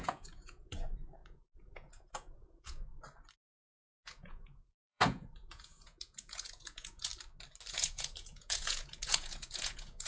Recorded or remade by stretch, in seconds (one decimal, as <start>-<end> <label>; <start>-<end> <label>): 0.0-2.9 remade; 2.9-3.8 recorded; 3.8-7.1 remade; 7.1-7.7 recorded; 7.7-10.1 remade

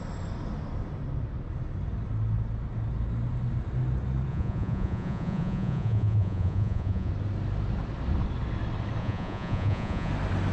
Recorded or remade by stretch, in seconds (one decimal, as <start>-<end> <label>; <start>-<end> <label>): 0.0-4.3 recorded; 4.3-7.1 remade; 7.1-9.0 recorded; 9.0-10.1 remade; 10.1-10.5 recorded

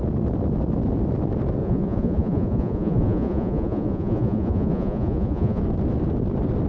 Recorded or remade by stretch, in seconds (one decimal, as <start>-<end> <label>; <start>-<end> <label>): 0.0-1.6 recorded; 1.6-5.6 remade; 5.6-6.7 recorded

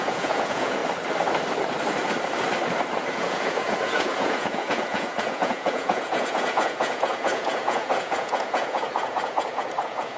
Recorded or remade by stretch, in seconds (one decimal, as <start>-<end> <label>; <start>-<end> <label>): 0.0-0.8 remade; 0.8-3.1 recorded; 3.1-10.2 remade

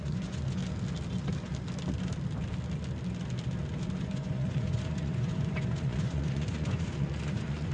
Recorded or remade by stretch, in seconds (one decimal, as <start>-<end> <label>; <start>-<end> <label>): 0.0-0.6 remade; 0.6-4.0 recorded; 4.0-7.7 remade